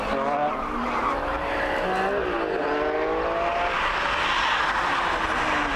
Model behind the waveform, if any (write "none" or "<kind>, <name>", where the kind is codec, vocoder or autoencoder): none